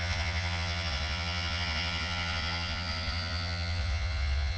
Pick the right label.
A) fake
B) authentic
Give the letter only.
A